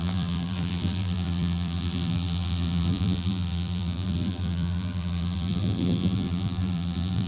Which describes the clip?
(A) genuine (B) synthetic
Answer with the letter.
B